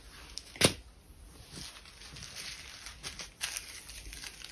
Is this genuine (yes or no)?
yes